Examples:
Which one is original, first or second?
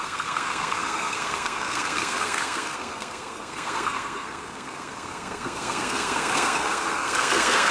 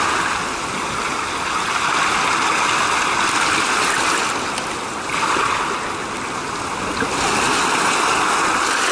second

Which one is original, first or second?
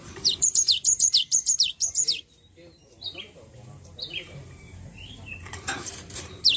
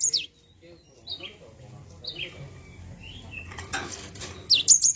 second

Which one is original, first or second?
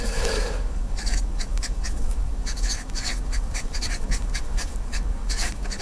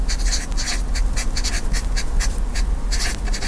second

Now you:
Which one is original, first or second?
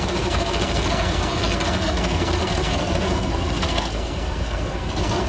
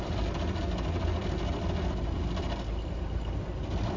second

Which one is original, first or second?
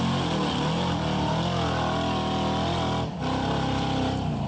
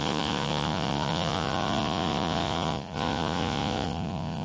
first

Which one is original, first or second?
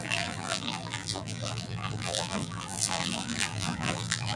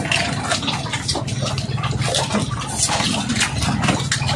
second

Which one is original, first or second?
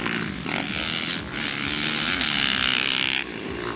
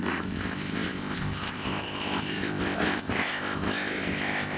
first